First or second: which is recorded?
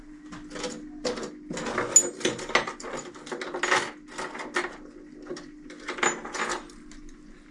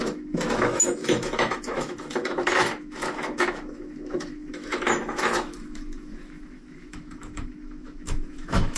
first